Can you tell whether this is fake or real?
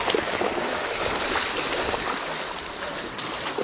real